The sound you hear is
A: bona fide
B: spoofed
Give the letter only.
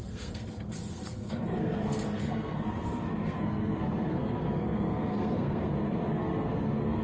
B